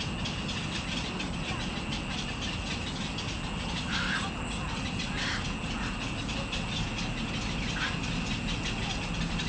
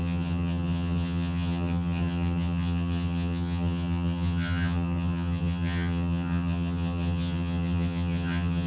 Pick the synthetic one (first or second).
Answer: second